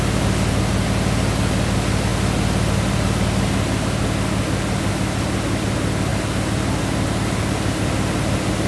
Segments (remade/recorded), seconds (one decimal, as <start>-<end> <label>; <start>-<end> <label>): 0.0-8.7 recorded